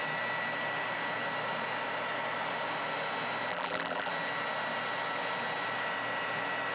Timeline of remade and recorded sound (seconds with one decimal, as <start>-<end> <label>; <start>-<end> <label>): 0.0-3.5 recorded; 3.5-4.1 remade; 4.1-6.7 recorded